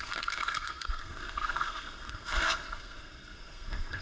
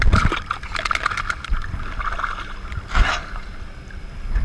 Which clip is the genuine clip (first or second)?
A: second